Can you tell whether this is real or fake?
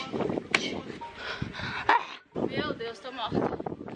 real